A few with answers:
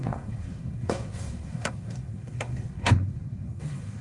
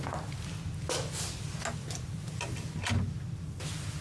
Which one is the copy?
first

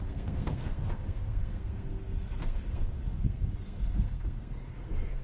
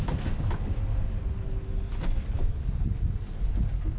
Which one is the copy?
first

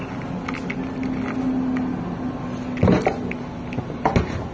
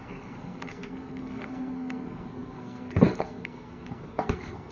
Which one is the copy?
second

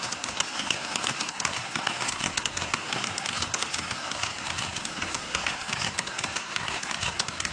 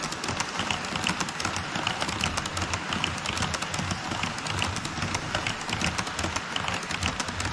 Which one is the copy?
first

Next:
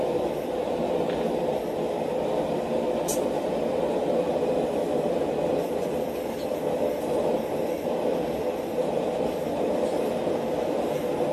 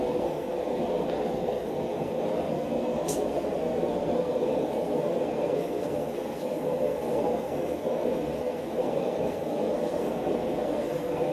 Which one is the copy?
second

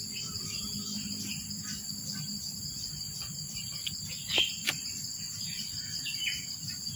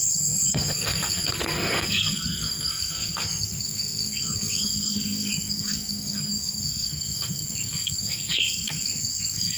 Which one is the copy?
second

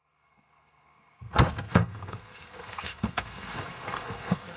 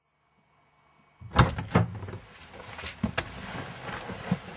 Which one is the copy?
first